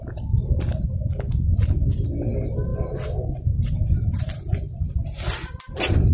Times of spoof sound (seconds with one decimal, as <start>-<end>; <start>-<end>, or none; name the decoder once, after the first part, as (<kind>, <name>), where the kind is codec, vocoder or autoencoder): none